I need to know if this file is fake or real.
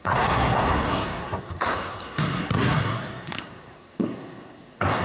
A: fake